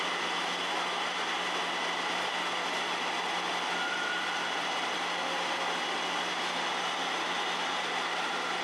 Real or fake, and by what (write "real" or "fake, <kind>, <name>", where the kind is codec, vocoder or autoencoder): real